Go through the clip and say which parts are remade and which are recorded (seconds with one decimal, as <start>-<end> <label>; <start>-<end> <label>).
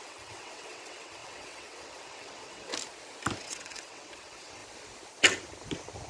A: 0.0-2.7 remade; 2.7-3.4 recorded; 3.4-4.6 remade; 4.6-6.1 recorded